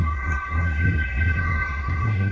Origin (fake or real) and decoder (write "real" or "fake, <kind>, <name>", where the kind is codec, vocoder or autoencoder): fake, codec, SNAC